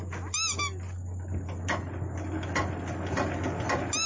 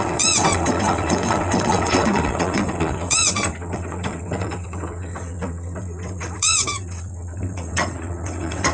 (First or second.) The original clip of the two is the first